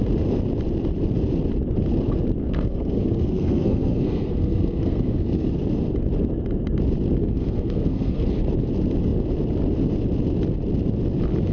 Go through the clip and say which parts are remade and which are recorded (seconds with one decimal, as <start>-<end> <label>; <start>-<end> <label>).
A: 0.0-2.4 recorded; 2.4-5.5 remade; 5.5-7.2 recorded; 7.2-8.3 remade; 8.3-11.5 recorded